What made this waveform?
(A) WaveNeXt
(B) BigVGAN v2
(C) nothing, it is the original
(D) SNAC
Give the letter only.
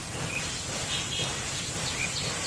C